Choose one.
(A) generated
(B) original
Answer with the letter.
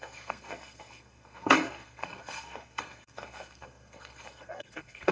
A